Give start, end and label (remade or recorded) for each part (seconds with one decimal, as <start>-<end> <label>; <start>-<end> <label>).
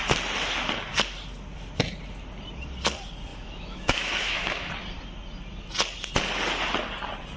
0.0-3.3 recorded; 3.3-4.7 remade; 4.7-7.4 recorded